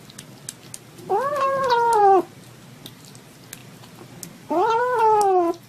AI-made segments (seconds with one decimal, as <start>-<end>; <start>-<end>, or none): 1.3-2.0